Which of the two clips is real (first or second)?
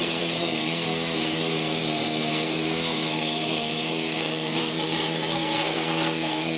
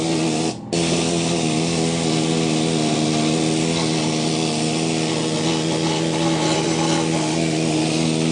second